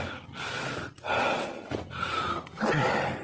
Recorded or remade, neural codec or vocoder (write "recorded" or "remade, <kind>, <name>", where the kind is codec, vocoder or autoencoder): recorded